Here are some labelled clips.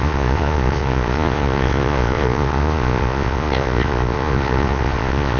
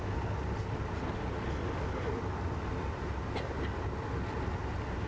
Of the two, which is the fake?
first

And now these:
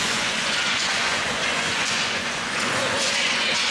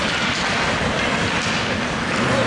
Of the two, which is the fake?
first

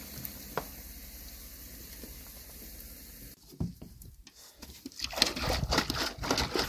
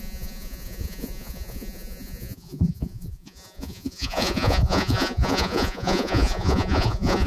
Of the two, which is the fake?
second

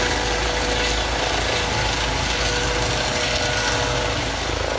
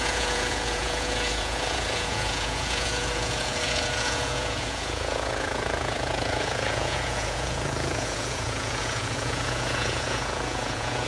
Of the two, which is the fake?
second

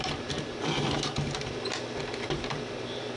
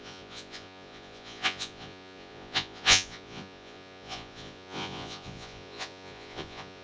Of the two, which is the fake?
second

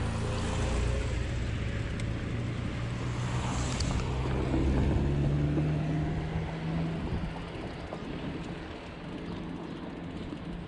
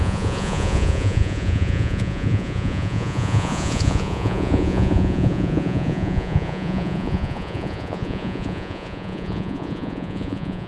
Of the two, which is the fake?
second